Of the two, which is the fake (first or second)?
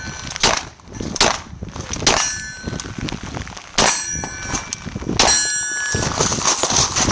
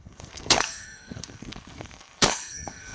second